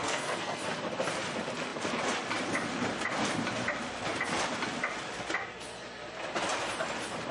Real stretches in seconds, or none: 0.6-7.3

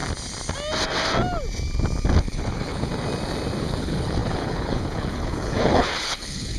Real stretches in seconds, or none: 0.0-2.2; 2.9-3.6

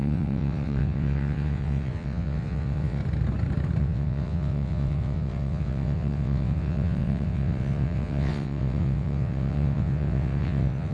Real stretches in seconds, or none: 3.0-3.8

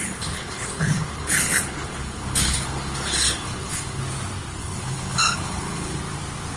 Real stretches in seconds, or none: 4.0-4.6; 6.0-6.6

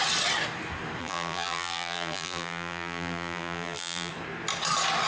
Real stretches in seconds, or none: 0.0-1.0; 4.1-5.1